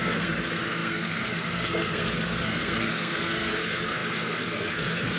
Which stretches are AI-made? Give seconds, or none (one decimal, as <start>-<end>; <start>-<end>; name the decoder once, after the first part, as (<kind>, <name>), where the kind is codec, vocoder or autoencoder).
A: 0.0-5.2 (codec, SNAC)